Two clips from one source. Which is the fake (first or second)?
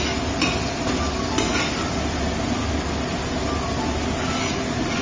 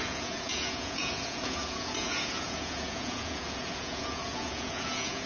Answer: second